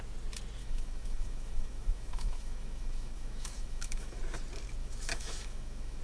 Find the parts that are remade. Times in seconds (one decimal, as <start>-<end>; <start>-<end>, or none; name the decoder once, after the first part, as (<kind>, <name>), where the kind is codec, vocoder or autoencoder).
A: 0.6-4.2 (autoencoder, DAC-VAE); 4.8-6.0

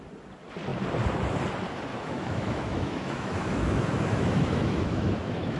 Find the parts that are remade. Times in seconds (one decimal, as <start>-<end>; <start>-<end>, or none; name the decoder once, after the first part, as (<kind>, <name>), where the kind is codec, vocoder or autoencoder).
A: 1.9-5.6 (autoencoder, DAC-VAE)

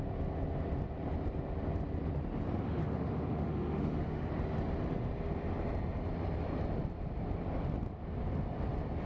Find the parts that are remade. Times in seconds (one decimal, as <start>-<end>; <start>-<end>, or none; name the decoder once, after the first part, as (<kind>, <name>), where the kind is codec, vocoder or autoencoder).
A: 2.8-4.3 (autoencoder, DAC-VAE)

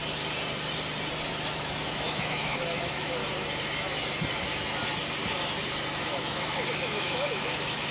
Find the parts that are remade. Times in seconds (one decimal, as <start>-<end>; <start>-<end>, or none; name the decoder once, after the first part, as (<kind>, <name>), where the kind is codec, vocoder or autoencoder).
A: 1.5-3.2 (autoencoder, DAC-VAE); 6.0-7.9

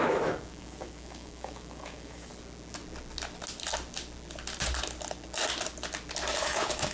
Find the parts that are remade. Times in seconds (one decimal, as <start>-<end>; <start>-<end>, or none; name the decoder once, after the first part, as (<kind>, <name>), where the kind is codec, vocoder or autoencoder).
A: 0.0-2.3 (autoencoder, DAC-VAE); 6.4-6.9

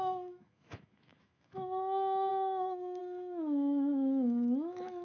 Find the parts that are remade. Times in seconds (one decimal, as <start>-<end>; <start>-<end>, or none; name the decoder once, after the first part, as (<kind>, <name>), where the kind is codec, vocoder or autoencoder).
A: 0.0-5.0 (autoencoder, DAC-VAE)